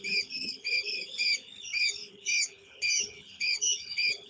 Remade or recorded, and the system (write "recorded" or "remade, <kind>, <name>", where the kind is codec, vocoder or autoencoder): remade, codec, HILCodec